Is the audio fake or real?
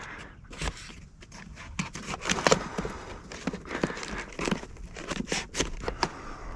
real